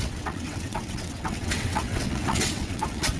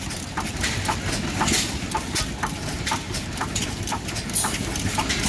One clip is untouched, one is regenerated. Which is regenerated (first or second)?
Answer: first